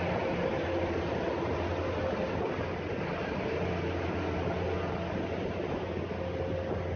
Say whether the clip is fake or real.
real